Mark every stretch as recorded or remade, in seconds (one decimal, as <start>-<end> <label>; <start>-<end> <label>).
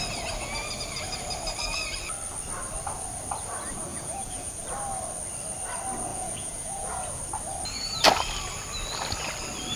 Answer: 0.0-3.9 recorded; 3.9-4.6 remade; 4.6-6.1 recorded; 6.1-7.2 remade; 7.2-9.8 recorded